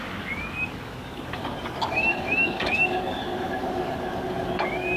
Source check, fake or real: fake